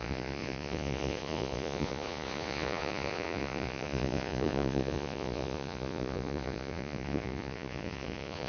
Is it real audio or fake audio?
fake